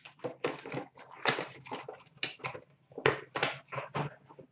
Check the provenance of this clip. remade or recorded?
recorded